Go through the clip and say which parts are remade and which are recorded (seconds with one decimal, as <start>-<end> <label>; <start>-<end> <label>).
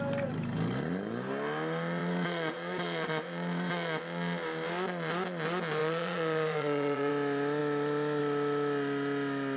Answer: 0.0-2.0 recorded; 2.0-4.0 remade; 4.0-5.8 recorded; 5.8-7.1 remade; 7.1-9.6 recorded